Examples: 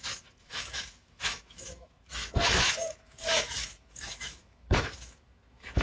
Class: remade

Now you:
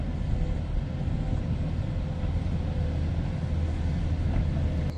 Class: recorded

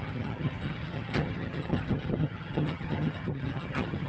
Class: remade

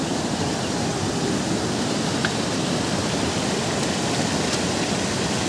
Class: recorded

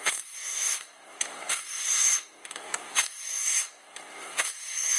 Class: remade